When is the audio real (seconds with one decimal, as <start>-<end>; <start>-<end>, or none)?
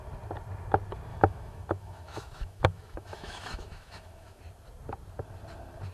0.0-1.1; 4.4-5.9